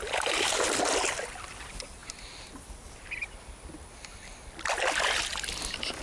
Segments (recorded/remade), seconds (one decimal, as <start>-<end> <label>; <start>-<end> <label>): 0.0-6.0 recorded